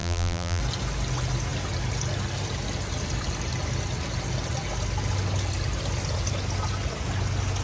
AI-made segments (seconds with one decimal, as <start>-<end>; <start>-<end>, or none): 0.0-0.6